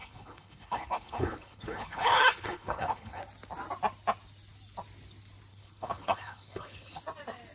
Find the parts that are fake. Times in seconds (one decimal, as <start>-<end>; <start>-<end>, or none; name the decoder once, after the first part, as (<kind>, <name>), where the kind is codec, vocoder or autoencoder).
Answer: 0.0-3.2 (codec, HILCodec); 5.5-7.0